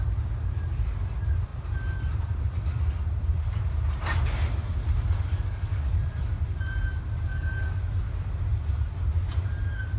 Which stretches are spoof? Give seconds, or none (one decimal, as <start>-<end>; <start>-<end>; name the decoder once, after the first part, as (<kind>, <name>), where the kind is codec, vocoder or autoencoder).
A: 5.3-5.9 (codec, DAC); 7.3-7.8